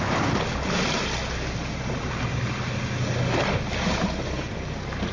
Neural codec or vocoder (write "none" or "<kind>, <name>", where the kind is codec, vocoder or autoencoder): none